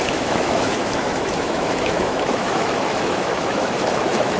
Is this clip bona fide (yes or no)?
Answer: no